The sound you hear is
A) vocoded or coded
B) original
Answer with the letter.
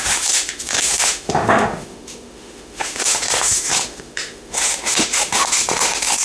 A